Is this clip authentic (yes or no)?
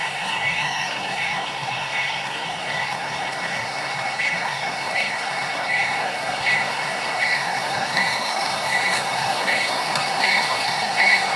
no